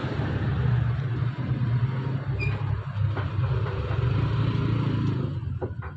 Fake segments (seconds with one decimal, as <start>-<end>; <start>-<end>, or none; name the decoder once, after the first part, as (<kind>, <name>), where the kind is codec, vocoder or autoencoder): 0.0-1.0 (vocoder, BigVGAN v2)